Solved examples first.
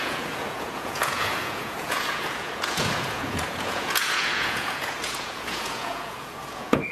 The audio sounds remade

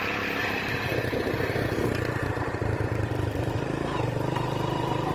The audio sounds remade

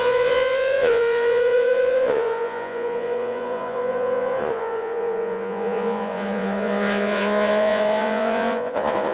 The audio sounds remade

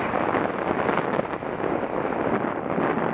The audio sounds recorded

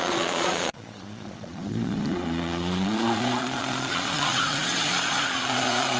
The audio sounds remade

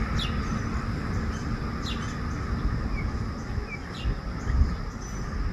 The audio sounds recorded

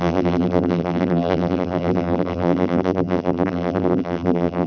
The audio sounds remade